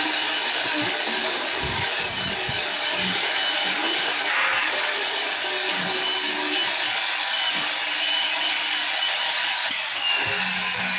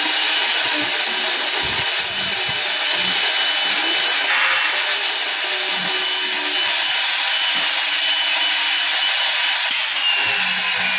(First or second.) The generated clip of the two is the first